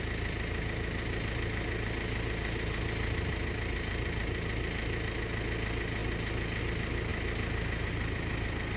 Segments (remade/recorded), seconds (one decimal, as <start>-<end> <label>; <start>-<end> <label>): 0.0-8.8 recorded

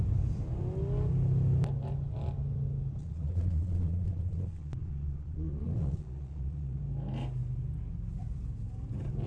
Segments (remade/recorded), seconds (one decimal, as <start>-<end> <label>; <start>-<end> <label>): 0.0-3.0 recorded; 3.0-6.8 remade; 6.8-9.3 recorded

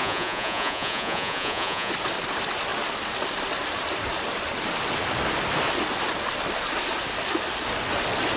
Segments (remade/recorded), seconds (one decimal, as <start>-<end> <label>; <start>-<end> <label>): 0.0-1.9 remade; 1.9-8.4 recorded

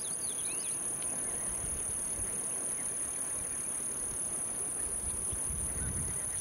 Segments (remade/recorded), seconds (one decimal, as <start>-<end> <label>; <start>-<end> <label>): 0.0-4.7 recorded; 4.7-5.3 remade; 5.3-6.4 recorded

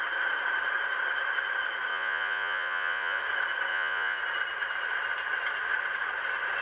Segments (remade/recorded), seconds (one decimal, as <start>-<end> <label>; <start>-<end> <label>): 0.0-1.9 recorded; 1.9-3.2 remade; 3.2-3.7 recorded; 3.7-4.2 remade; 4.2-6.6 recorded

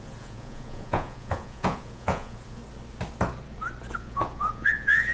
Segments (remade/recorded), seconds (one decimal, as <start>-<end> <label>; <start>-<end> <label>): 0.0-2.6 remade; 2.6-4.0 recorded; 4.0-5.1 remade

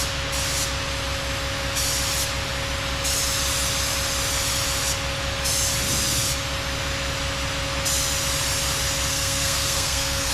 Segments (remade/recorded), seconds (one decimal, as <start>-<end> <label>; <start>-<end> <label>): 0.0-9.1 recorded; 9.1-10.3 remade

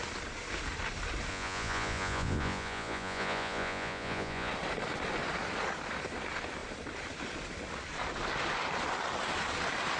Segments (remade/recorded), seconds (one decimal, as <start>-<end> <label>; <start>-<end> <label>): 0.0-1.3 recorded; 1.3-4.5 remade; 4.5-10.0 recorded